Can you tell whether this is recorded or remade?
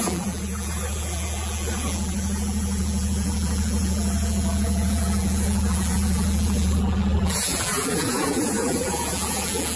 remade